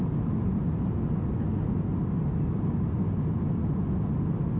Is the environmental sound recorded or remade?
recorded